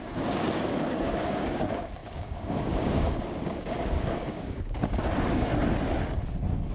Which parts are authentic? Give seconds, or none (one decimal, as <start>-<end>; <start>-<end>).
5.5-6.7